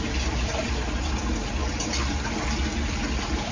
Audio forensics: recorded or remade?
recorded